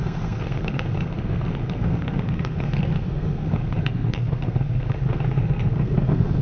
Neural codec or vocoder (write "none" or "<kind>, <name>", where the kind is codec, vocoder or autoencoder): codec, SNAC